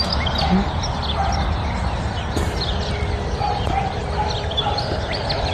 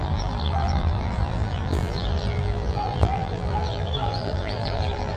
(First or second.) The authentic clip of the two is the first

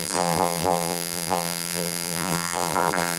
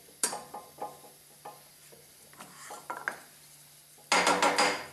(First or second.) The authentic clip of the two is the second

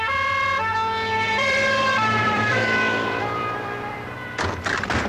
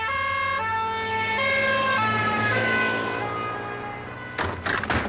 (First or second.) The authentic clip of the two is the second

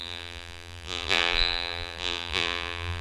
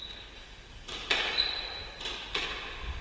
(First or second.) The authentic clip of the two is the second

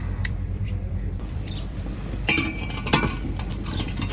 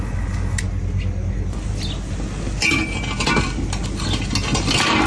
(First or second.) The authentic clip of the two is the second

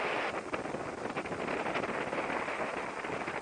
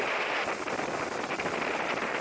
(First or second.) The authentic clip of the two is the first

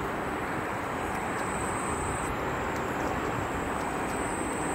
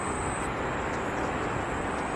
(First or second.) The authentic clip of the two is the second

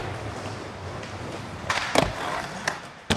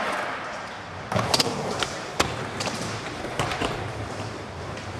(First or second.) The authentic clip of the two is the first